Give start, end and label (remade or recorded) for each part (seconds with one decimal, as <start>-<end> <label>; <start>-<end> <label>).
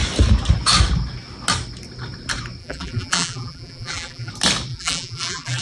0.0-2.6 recorded; 2.6-4.3 remade; 4.3-4.7 recorded; 4.7-5.6 remade